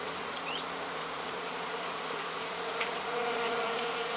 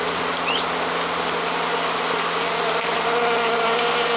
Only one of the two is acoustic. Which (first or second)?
second